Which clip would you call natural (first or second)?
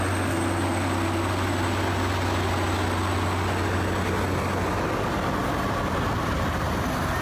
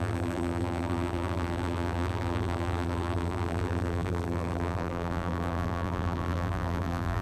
first